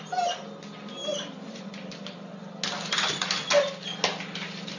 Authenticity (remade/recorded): recorded